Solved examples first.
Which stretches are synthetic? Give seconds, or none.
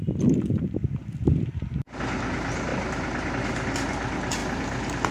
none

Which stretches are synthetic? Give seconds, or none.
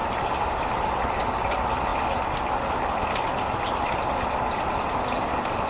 0.0-0.5 (vocoder, BigVGAN v2)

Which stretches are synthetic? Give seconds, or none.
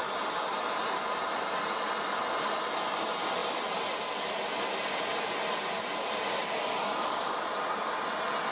none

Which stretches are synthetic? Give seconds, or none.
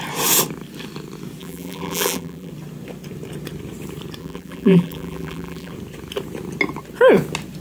1.4-2.5 (vocoder, BigVGAN v2); 4.2-5.7